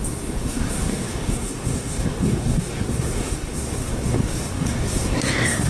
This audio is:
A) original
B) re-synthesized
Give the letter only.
B